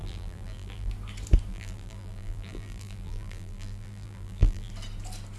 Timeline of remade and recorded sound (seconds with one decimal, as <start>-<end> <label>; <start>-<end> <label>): 0.0-0.9 remade; 0.9-1.5 recorded; 1.5-4.7 remade; 4.7-5.4 recorded